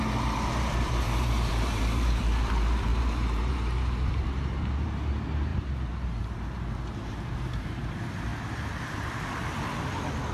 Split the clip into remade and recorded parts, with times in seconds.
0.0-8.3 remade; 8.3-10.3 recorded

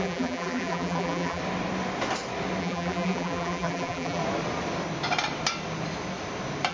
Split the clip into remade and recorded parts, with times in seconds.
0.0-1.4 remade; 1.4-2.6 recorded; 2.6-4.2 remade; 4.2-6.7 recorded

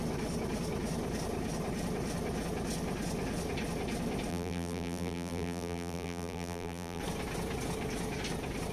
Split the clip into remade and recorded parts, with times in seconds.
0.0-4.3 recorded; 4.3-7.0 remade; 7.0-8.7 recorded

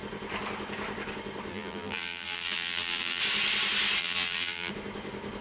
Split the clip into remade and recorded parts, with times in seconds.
0.0-1.5 recorded; 1.5-3.2 remade; 3.2-4.0 recorded; 4.0-4.7 remade; 4.7-5.4 recorded

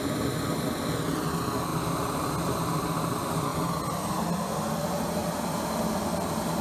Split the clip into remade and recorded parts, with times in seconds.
0.0-5.2 recorded; 5.2-6.0 remade; 6.0-6.6 recorded

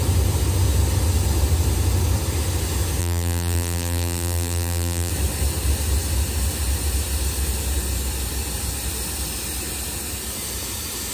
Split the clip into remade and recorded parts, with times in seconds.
0.0-3.0 recorded; 3.0-5.1 remade; 5.1-11.1 recorded

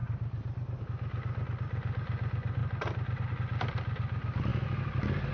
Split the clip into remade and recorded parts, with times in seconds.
0.0-0.8 remade; 0.8-5.3 recorded

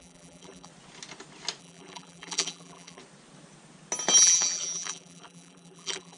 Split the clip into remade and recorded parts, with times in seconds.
0.0-0.7 remade; 0.7-1.6 recorded; 1.6-3.0 remade; 3.0-4.2 recorded; 4.2-6.2 remade